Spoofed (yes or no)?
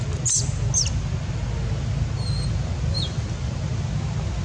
no